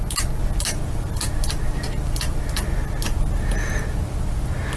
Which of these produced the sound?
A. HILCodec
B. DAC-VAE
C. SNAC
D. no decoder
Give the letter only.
D